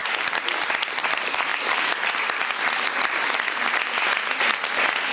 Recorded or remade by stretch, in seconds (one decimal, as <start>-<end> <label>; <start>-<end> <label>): 0.0-0.7 remade; 0.7-1.5 recorded; 1.5-3.9 remade; 3.9-5.1 recorded